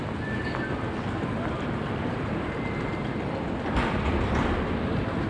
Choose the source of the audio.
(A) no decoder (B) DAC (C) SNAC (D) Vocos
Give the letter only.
A